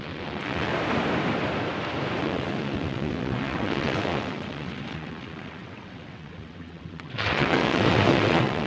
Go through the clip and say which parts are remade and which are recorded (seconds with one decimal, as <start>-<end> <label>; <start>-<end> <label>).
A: 0.0-0.7 remade; 0.7-2.2 recorded; 2.2-8.7 remade